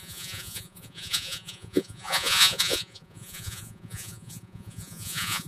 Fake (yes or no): yes